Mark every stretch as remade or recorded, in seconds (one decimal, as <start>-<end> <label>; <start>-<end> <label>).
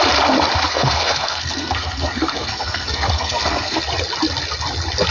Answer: 0.0-0.7 recorded; 0.7-3.8 remade; 3.8-5.1 recorded